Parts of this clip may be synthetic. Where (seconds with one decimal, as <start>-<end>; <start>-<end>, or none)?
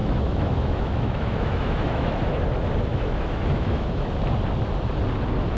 0.0-2.4; 2.9-4.1